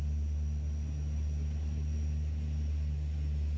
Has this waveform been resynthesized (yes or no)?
no